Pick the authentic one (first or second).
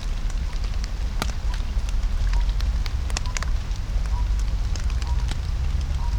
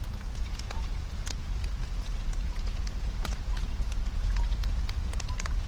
first